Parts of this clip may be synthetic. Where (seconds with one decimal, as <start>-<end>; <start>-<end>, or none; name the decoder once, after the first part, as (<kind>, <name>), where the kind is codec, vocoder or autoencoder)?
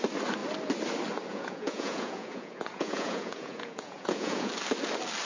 1.3-4.5 (vocoder, Vocos)